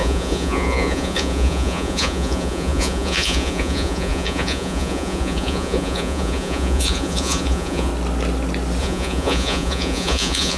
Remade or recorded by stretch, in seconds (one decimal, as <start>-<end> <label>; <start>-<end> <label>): 0.0-7.9 remade; 7.9-8.8 recorded; 8.8-10.6 remade